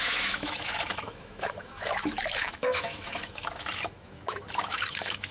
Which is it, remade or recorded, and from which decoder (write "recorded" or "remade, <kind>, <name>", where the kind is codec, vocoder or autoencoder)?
remade, autoencoder, DAC-VAE